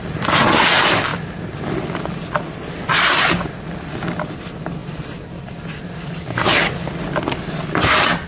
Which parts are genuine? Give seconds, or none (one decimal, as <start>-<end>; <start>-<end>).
0.0-4.8; 6.7-8.3